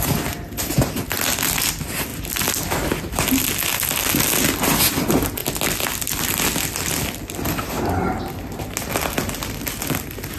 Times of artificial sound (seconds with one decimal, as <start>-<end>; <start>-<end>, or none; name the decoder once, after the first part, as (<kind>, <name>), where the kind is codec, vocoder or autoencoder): none